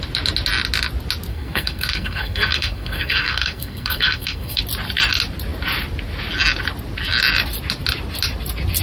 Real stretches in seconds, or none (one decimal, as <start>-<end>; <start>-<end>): 0.0-1.3; 4.6-8.8